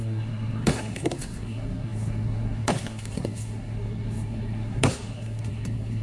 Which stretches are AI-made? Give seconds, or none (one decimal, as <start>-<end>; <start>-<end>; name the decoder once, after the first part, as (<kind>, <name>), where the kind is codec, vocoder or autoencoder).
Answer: 0.0-6.0 (codec, SNAC)